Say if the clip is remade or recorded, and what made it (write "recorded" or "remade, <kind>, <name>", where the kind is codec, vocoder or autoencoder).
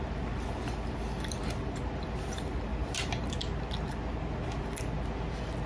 recorded